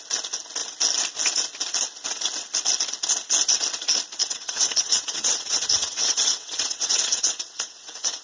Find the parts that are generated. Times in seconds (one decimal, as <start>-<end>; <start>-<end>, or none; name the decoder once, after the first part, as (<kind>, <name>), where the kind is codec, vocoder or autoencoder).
4.2-8.2 (vocoder, WaveNeXt)